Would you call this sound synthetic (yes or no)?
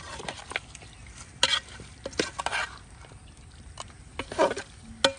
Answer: no